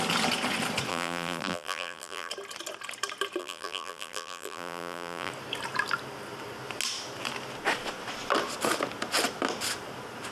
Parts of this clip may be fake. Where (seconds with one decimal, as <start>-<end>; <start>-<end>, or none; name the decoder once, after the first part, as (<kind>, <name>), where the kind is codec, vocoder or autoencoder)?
0.9-2.3 (vocoder, BigVGAN v2); 3.4-5.3

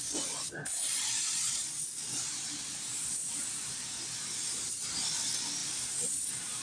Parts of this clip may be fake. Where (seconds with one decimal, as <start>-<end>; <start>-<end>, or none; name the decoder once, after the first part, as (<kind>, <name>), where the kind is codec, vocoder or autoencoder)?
0.9-4.9 (vocoder, BigVGAN v2); 5.6-6.6

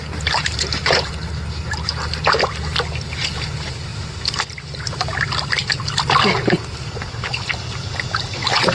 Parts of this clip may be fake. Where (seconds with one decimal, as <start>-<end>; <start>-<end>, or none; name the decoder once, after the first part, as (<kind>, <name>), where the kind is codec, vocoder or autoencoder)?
0.4-1.1 (vocoder, BigVGAN v2)

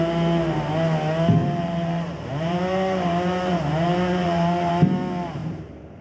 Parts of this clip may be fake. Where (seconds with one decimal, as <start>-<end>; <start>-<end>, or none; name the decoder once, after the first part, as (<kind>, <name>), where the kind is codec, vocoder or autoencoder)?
1.4-4.7 (vocoder, BigVGAN v2); 5.4-6.0

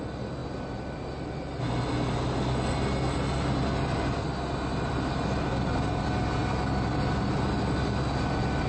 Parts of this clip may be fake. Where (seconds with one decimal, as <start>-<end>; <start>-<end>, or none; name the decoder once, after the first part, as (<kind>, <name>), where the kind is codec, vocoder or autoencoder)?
none

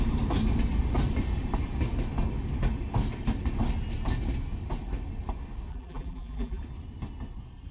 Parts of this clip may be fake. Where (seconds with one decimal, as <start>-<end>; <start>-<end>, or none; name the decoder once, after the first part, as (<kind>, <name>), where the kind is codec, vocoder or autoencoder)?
5.7-6.6 (vocoder, BigVGAN v2)

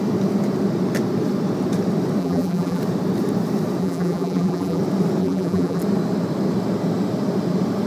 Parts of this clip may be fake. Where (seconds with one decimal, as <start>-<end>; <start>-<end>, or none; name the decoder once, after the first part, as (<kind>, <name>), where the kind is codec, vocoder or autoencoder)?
2.2-2.8 (vocoder, BigVGAN v2); 3.8-4.8; 5.2-5.8

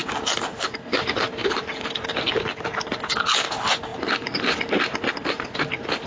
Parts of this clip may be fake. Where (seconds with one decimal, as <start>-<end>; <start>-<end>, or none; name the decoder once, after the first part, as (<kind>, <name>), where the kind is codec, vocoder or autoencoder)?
0.0-0.9 (vocoder, BigVGAN v2); 1.4-2.2